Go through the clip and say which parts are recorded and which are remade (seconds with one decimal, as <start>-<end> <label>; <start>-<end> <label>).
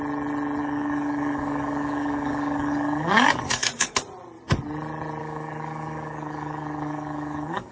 0.0-0.6 recorded; 0.6-4.0 remade; 4.0-5.2 recorded; 5.2-7.7 remade